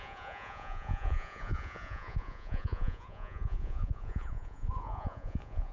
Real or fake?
fake